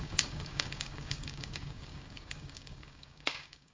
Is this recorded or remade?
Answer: remade